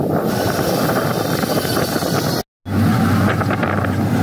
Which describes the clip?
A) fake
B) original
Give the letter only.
B